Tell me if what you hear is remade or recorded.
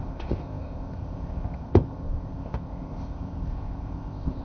remade